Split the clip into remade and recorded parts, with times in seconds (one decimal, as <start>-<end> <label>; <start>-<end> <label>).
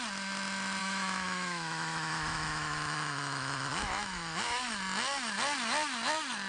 0.0-0.8 recorded; 0.8-4.7 remade; 4.7-6.5 recorded